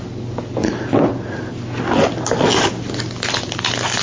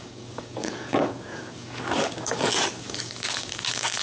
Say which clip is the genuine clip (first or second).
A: first